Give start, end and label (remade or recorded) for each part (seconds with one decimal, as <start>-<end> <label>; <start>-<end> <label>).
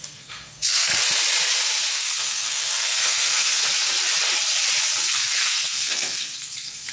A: 0.0-0.9 remade; 0.9-1.9 recorded; 1.9-3.6 remade; 3.6-5.1 recorded; 5.1-6.9 remade